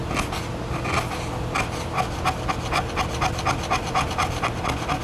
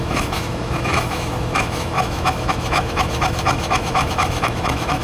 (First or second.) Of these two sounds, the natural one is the first